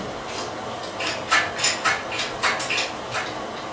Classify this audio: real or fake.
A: real